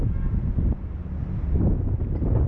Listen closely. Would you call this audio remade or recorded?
recorded